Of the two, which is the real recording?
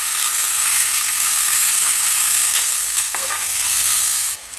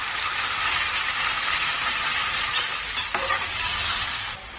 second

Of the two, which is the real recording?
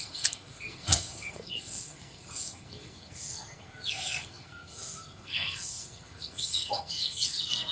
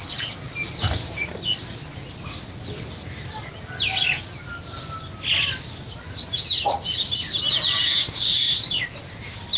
second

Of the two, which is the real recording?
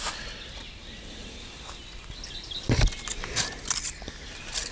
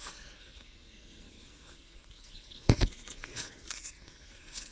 first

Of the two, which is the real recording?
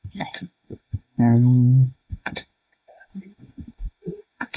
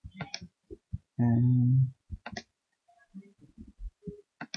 second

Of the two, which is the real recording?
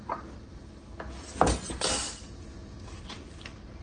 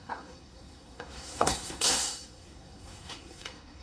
first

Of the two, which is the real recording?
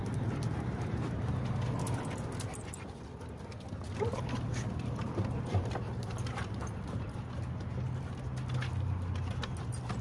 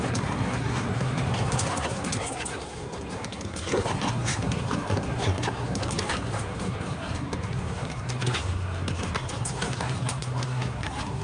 first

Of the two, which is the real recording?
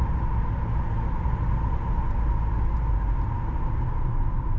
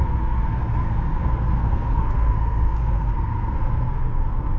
first